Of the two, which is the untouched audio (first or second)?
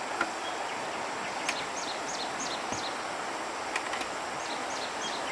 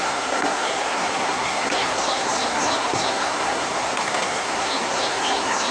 first